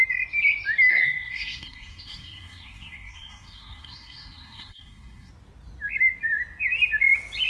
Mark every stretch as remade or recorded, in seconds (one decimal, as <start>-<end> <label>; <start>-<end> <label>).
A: 0.0-0.9 recorded; 0.9-5.3 remade; 5.3-7.5 recorded